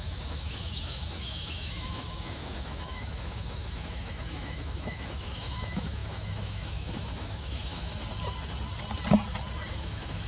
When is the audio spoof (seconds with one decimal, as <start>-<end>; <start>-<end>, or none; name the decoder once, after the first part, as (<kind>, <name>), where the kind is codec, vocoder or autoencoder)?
0.0-7.9 (autoencoder, DAC-VAE); 9.7-10.3